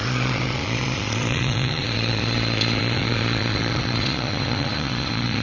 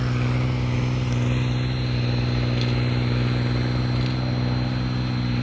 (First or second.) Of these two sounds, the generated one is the first